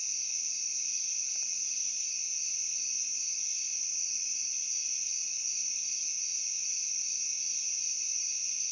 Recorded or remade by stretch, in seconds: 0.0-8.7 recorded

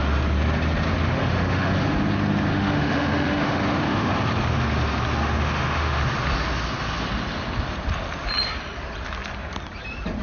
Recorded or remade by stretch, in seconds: 0.0-1.2 recorded; 1.2-1.8 remade; 1.8-2.5 recorded; 2.5-4.1 remade; 4.1-5.4 recorded; 5.4-6.0 remade; 6.0-10.2 recorded